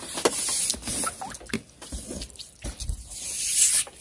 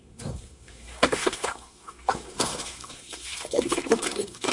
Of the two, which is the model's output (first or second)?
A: second